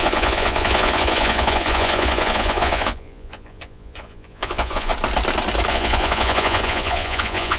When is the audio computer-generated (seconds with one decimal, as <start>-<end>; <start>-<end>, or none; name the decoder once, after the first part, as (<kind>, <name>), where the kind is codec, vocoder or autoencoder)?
0.0-4.9 (vocoder, Vocos); 5.7-7.6